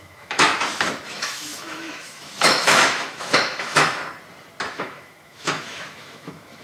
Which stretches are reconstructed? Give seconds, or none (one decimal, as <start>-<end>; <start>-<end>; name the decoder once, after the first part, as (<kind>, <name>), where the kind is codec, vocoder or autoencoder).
0.0-0.5 (autoencoder, DAC-VAE); 1.1-4.0; 4.7-6.6